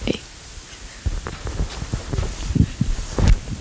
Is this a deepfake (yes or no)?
no